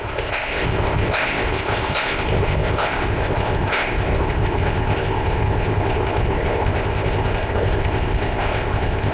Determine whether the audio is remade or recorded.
remade